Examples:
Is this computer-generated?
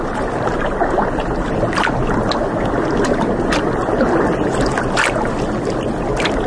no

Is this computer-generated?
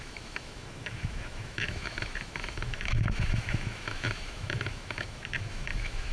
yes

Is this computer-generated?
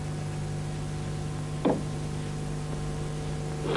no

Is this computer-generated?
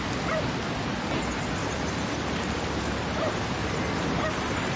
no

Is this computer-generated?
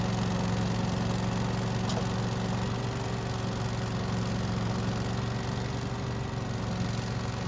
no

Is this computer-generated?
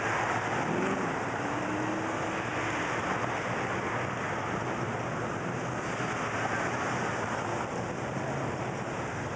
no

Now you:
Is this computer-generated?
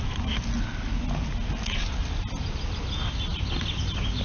no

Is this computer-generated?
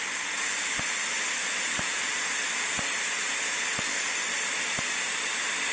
no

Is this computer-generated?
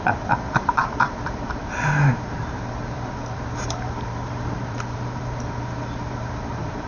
yes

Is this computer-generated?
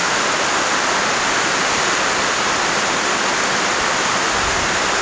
no